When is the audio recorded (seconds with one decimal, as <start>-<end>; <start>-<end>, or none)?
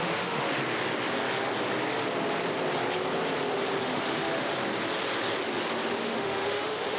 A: 0.6-3.8; 4.5-5.9